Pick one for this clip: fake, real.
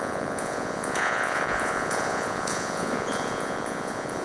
fake